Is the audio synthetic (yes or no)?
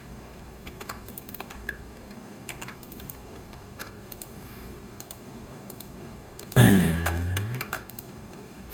yes